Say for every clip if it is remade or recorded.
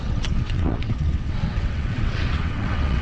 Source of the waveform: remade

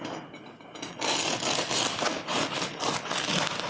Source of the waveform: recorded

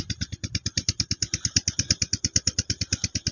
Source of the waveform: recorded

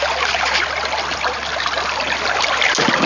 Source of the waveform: recorded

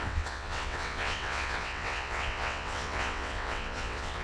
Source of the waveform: remade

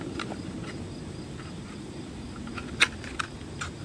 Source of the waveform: recorded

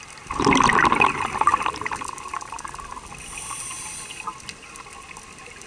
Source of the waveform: recorded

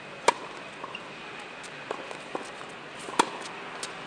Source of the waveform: recorded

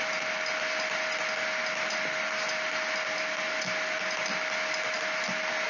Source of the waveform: recorded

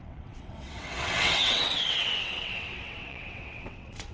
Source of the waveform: remade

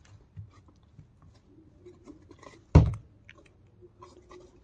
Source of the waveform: recorded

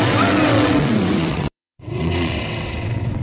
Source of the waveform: remade